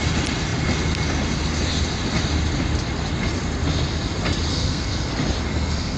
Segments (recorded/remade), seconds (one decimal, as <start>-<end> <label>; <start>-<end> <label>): 0.0-4.5 recorded; 4.5-5.1 remade; 5.1-5.5 recorded; 5.5-6.0 remade